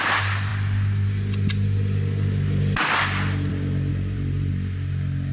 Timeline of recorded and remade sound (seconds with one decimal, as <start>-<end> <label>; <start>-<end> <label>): 0.0-3.9 recorded; 3.9-4.5 remade; 4.5-5.3 recorded